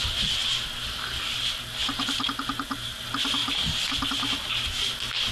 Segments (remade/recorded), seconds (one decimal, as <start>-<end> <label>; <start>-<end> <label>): 0.0-5.3 recorded